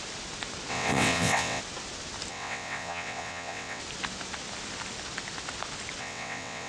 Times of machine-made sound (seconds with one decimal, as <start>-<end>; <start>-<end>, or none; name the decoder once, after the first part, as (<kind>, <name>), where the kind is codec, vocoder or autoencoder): 0.7-1.6 (vocoder, WaveNeXt); 2.3-3.8; 6.0-6.7